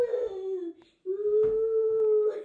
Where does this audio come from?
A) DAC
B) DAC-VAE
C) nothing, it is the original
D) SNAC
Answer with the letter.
C